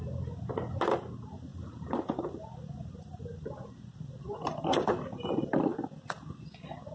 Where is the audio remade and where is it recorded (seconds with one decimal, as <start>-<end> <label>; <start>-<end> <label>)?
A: 0.0-1.5 recorded; 1.5-5.6 remade; 5.6-6.9 recorded